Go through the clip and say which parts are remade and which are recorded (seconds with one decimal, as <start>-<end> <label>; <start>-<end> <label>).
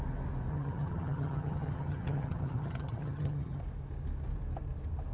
0.0-0.5 recorded; 0.5-3.6 remade; 3.6-5.1 recorded